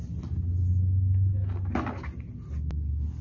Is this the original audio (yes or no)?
yes